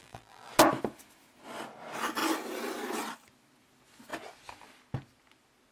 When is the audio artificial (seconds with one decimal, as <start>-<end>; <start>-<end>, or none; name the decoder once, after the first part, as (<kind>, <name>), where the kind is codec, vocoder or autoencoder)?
0.0-0.5 (vocoder, BigVGAN v2)